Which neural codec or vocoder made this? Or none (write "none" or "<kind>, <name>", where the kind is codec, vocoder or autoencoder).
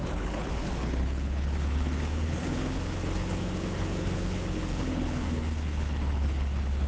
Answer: codec, HILCodec